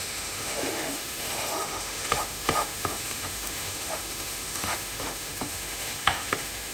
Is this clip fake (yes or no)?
yes